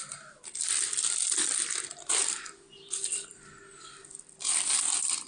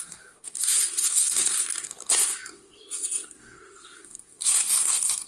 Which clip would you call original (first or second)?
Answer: first